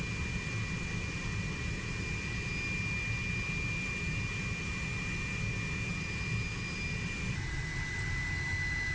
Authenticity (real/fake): real